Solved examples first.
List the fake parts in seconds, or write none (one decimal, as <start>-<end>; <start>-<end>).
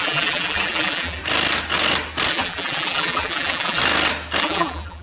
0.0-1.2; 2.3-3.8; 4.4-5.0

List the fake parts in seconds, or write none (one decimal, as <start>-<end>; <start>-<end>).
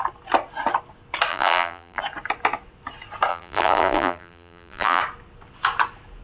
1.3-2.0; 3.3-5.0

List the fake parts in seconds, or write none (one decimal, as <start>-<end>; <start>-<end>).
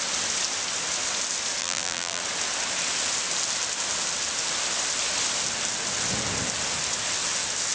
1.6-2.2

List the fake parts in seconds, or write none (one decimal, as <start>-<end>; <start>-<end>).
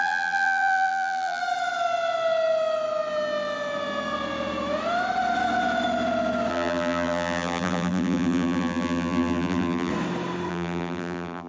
0.0-1.4; 6.5-9.9; 10.5-11.5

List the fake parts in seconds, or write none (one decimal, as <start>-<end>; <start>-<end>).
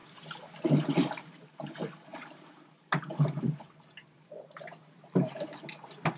2.1-2.8; 4.8-5.6